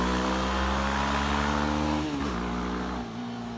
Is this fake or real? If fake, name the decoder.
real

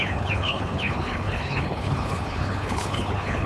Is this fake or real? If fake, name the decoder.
fake, codec, HILCodec